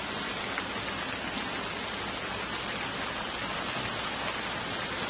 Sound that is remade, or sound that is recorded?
recorded